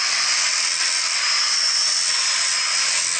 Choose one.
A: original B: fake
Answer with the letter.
A